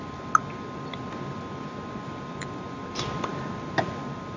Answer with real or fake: real